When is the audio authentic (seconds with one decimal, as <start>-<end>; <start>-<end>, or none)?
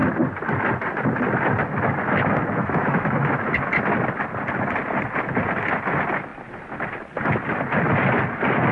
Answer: 0.0-2.6; 3.3-8.7